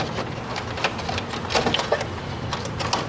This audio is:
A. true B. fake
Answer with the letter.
A